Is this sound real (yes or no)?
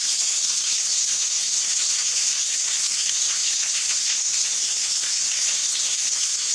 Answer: no